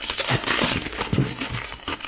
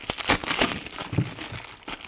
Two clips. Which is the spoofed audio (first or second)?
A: first